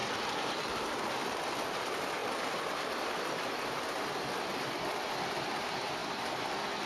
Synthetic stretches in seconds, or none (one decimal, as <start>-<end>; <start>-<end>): none